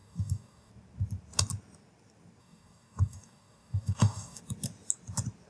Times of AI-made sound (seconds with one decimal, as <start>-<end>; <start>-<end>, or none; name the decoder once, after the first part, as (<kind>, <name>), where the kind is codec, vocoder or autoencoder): 0.0-0.7 (codec, DAC); 2.4-4.4